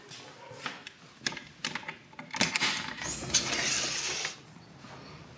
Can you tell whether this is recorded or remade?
recorded